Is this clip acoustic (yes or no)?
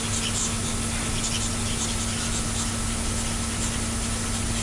yes